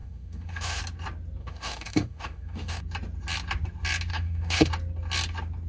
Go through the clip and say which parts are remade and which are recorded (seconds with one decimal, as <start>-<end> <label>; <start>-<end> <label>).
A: 0.0-0.8 remade; 0.8-1.4 recorded; 1.4-2.8 remade; 2.8-4.1 recorded; 4.1-4.7 remade; 4.7-5.7 recorded